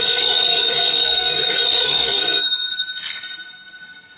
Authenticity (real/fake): fake